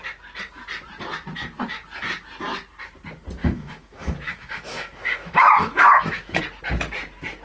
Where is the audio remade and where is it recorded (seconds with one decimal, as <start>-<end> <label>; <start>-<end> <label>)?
0.0-3.4 recorded; 3.4-6.4 remade; 6.4-7.4 recorded